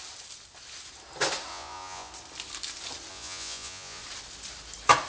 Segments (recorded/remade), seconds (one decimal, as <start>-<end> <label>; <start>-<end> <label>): 0.0-1.5 recorded; 1.5-2.1 remade; 2.1-3.1 recorded; 3.1-4.0 remade; 4.0-5.1 recorded